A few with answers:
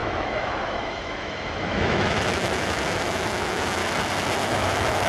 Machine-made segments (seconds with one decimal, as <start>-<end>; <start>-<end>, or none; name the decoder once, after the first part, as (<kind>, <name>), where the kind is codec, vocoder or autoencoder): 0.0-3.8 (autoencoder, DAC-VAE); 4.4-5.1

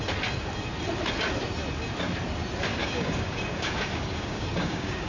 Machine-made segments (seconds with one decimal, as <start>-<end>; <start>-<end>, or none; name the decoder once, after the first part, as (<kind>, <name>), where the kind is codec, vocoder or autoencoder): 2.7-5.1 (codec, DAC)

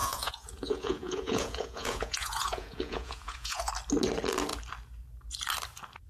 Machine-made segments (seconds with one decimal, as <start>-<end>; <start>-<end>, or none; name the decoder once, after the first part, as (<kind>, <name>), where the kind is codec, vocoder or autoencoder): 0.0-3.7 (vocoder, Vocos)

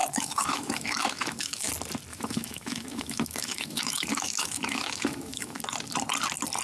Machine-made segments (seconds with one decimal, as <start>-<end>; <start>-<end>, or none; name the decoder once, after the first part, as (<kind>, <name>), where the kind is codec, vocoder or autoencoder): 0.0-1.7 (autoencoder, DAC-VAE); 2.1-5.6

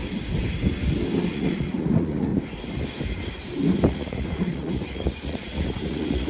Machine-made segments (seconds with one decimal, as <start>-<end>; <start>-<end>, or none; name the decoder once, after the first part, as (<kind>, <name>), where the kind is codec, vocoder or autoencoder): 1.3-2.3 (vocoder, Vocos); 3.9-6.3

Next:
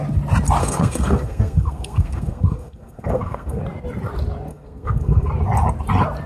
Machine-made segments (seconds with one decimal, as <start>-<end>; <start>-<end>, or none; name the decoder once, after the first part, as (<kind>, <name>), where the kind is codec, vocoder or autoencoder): 0.6-3.6 (codec, SNAC); 4.5-5.3